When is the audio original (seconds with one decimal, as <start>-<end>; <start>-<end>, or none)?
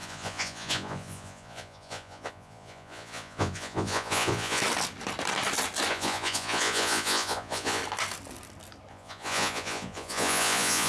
4.6-5.9; 7.8-8.9